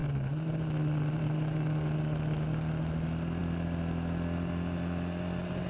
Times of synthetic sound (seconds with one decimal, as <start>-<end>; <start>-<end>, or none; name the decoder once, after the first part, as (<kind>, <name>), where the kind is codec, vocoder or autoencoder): none